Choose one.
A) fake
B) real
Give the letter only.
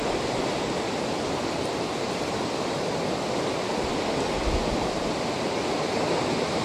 B